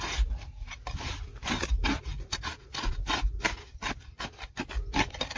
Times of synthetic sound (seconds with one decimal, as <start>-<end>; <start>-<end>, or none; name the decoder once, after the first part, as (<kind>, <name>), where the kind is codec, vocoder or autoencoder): 1.8-3.4 (vocoder, Vocos)